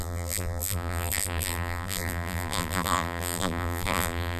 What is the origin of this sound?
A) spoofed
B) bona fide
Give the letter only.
A